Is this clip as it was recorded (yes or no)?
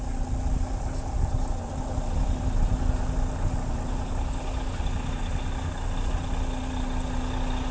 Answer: yes